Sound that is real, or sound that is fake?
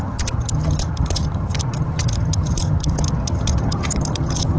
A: fake